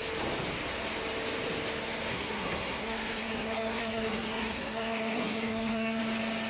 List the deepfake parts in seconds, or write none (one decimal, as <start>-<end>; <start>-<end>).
2.1-6.0